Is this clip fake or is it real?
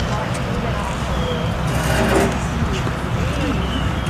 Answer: real